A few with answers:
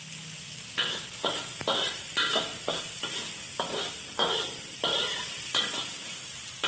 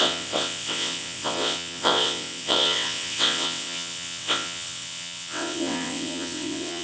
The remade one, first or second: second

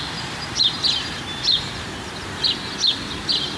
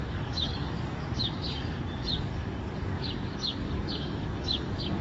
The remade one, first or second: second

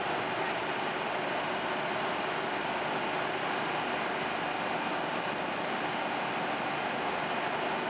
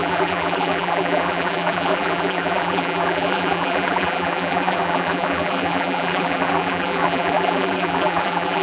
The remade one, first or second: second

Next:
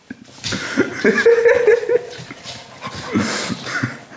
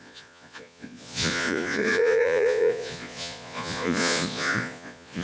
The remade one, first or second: second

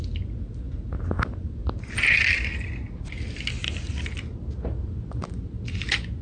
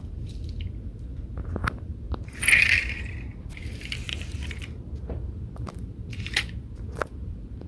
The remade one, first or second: second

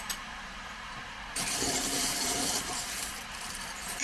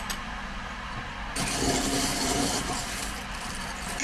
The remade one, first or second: first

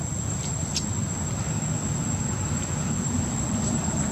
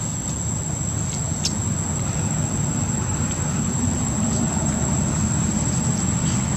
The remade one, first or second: first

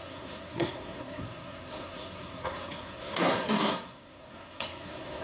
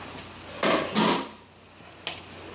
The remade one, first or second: first